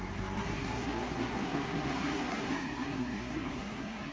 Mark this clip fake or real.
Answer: fake